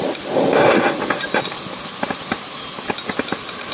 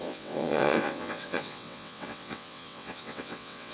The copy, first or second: second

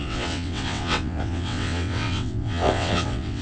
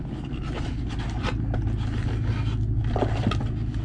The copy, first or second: first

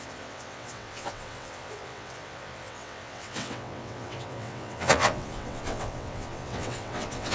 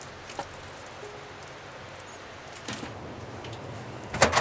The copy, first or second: first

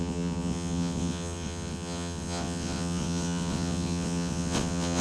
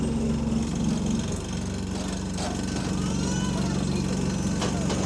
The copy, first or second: first